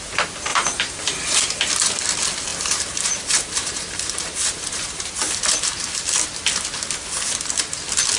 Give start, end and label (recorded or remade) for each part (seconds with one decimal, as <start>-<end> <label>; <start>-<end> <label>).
0.0-0.5 recorded; 0.5-1.4 remade; 1.4-2.5 recorded; 2.5-5.1 remade; 5.1-8.2 recorded